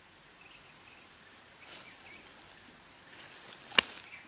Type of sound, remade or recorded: recorded